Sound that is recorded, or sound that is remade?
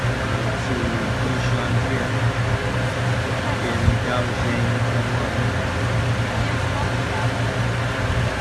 recorded